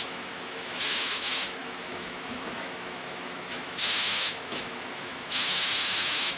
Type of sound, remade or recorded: remade